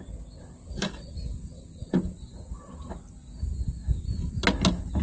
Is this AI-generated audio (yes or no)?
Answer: no